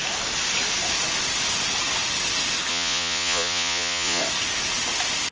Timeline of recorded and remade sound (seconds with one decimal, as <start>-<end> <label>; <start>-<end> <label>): 0.0-2.7 recorded; 2.7-4.2 remade; 4.2-5.3 recorded